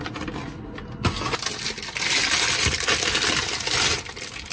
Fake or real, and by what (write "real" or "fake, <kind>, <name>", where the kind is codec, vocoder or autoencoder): real